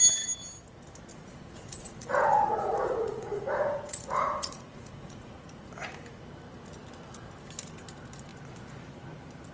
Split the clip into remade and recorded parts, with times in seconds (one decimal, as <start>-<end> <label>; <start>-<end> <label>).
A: 0.0-1.1 recorded; 1.1-5.7 remade; 5.7-9.5 recorded